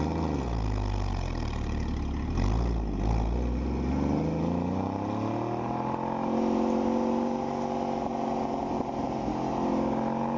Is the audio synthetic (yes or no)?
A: no